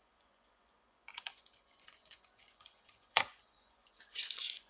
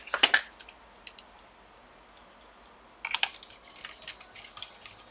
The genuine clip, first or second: second